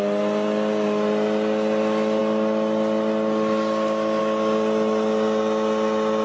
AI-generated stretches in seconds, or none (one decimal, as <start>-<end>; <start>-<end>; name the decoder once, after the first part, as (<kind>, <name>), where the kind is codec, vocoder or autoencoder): none